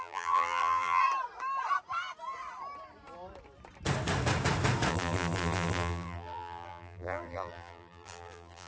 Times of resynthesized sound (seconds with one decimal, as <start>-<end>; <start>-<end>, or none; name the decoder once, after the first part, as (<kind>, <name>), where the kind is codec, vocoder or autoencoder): 0.0-1.0 (vocoder, BigVGAN v2); 4.9-8.7